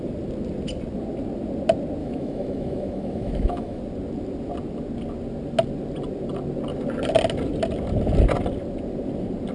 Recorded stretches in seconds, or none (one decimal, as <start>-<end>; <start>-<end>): 0.0-2.0; 3.8-9.5